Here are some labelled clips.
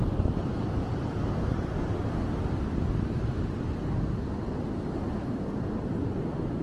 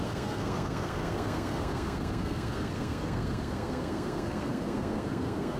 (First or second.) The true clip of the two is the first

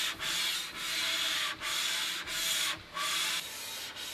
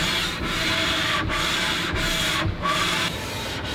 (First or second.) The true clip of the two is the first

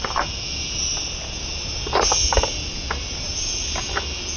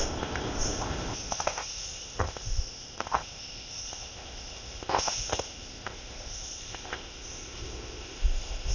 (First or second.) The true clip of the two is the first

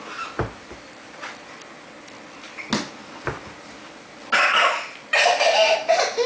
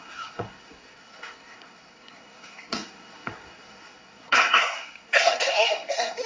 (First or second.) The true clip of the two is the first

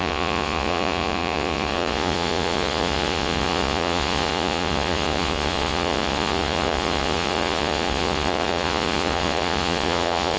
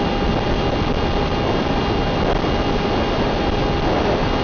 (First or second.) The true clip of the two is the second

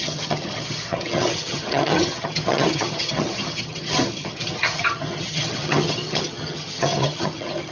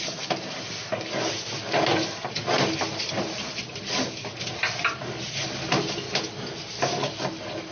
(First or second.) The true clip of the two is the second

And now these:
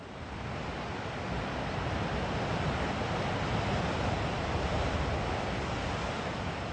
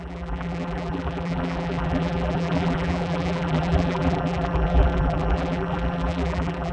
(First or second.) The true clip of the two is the first